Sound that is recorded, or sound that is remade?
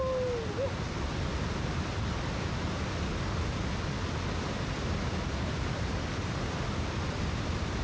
recorded